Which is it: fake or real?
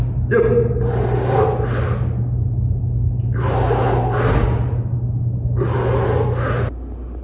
real